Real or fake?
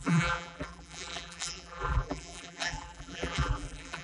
fake